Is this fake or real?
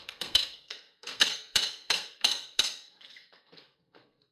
fake